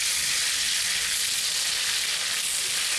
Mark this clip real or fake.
real